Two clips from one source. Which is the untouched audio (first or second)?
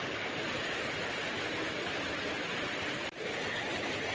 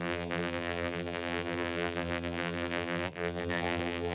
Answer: first